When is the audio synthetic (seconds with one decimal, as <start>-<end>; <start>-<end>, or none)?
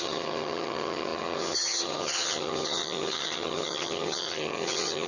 0.0-5.1